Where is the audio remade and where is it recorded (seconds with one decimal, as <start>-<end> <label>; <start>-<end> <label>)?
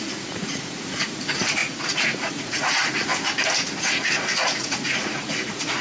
0.0-3.1 remade; 3.1-3.8 recorded; 3.8-5.8 remade